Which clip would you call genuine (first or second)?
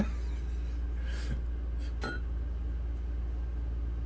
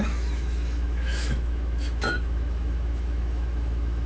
first